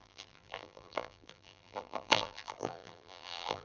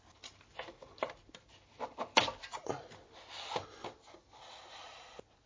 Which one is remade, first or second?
first